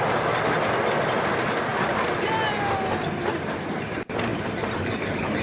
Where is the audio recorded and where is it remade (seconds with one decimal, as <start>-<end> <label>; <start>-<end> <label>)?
0.0-1.7 recorded; 1.7-2.3 remade; 2.3-4.3 recorded; 4.3-5.4 remade